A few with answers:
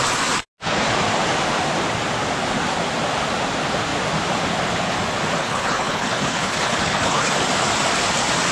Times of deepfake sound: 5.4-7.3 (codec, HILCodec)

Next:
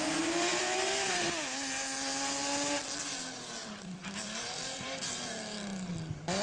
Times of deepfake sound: 0.5-1.2 (vocoder, BigVGAN v2); 3.6-5.4

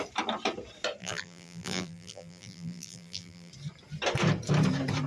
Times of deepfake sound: 1.0-3.5 (vocoder, BigVGAN v2)